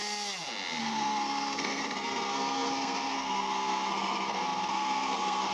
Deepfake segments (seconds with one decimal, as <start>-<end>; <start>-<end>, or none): 0.8-5.5